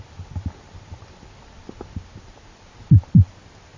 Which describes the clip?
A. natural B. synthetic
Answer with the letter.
A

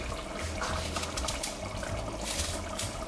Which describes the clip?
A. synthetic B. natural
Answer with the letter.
B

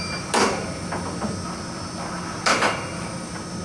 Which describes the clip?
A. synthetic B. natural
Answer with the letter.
B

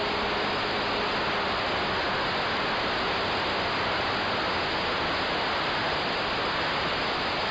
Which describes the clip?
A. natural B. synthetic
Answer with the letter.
A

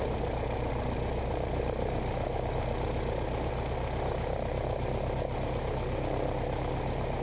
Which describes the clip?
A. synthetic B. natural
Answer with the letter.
B